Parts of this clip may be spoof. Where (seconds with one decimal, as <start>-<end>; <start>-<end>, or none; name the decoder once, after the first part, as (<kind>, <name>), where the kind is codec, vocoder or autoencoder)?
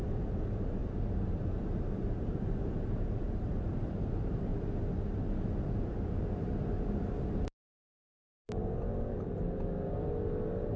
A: 0.0-4.5 (vocoder, BigVGAN v2); 5.8-8.6; 9.1-10.8